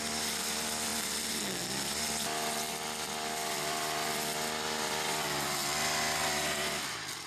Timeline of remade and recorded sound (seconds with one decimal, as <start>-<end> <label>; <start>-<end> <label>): 0.0-7.3 recorded